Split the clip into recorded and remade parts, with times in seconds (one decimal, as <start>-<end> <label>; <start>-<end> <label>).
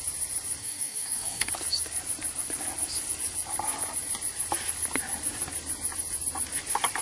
0.0-0.6 recorded; 0.6-1.5 remade; 1.5-7.0 recorded